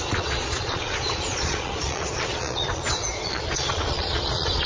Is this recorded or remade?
remade